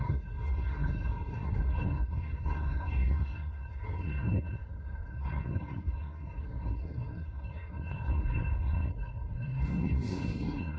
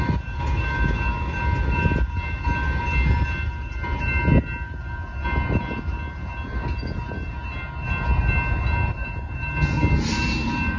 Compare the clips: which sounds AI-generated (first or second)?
first